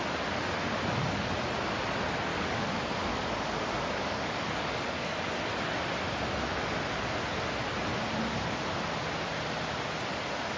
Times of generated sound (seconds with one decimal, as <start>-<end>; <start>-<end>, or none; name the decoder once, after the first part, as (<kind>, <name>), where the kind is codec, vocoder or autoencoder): 2.3-5.2 (codec, DAC)